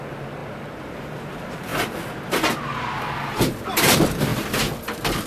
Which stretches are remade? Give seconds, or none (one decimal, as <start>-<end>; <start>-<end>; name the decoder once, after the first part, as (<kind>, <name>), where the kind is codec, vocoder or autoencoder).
0.0-1.7 (vocoder, BigVGAN v2); 3.3-4.3